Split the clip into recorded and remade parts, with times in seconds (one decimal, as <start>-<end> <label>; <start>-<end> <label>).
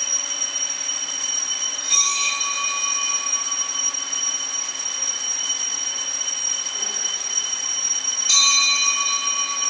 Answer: 0.0-1.8 recorded; 1.8-2.3 remade; 2.3-9.7 recorded